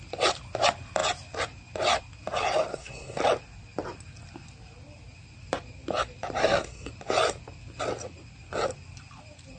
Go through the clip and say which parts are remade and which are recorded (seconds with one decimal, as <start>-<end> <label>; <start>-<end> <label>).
0.0-2.7 recorded; 2.7-3.2 remade; 3.2-6.4 recorded; 6.4-6.9 remade; 6.9-9.6 recorded